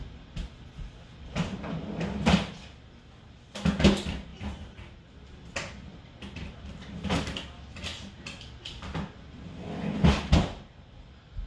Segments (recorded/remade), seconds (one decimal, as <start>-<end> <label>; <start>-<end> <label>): 0.0-11.5 recorded